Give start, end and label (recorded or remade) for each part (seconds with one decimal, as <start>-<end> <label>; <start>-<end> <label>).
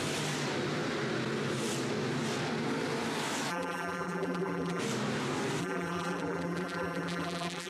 0.0-3.5 recorded; 3.5-4.8 remade; 4.8-5.6 recorded; 5.6-7.7 remade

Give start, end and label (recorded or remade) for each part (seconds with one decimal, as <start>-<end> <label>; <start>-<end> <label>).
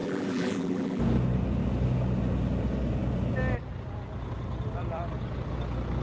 0.0-1.0 remade; 1.0-6.0 recorded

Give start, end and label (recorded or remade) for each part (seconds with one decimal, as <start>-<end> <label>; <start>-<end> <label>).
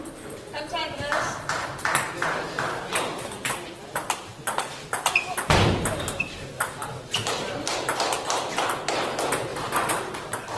0.0-0.8 recorded; 0.8-2.8 remade; 2.8-9.5 recorded; 9.5-10.0 remade; 10.0-10.6 recorded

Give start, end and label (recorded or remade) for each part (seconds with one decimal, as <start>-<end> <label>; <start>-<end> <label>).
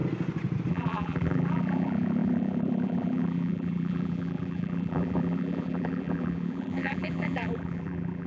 0.0-0.7 recorded; 0.7-8.3 remade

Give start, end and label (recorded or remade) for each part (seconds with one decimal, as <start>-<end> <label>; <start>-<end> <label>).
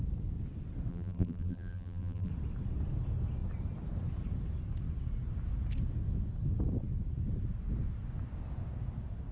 0.0-0.9 recorded; 0.9-2.3 remade; 2.3-9.3 recorded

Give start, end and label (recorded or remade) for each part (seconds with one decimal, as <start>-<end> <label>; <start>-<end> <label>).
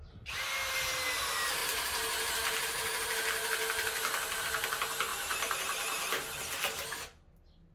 0.0-5.1 recorded; 5.1-5.6 remade; 5.6-7.7 recorded